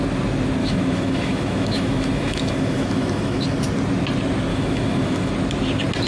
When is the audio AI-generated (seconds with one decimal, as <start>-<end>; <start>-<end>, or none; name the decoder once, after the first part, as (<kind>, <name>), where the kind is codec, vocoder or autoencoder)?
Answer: 0.6-3.4 (autoencoder, DAC-VAE); 4.5-5.3